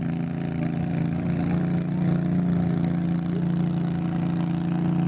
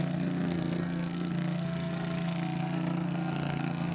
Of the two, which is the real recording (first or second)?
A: first